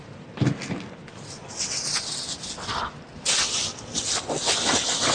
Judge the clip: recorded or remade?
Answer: recorded